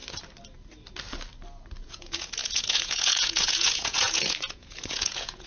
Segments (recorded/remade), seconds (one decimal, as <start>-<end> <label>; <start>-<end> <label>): 0.0-1.8 recorded; 1.8-5.5 remade